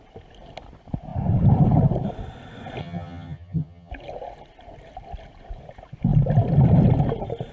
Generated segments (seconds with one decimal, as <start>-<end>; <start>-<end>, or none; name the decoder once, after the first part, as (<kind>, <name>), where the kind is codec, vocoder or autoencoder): 2.8-3.9 (vocoder, HiFi-GAN)